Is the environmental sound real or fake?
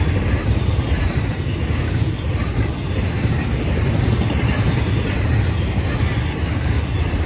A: real